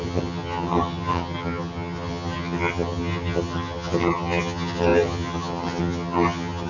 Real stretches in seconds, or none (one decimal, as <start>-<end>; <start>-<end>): none